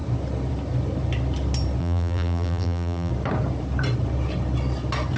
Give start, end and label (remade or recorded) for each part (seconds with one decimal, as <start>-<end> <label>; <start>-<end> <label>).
0.0-1.8 recorded; 1.8-3.1 remade; 3.1-5.2 recorded